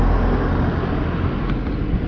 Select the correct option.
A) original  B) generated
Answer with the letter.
A